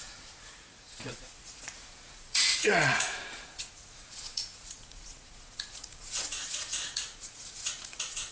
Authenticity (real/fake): fake